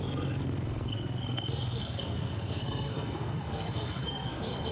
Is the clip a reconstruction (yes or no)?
yes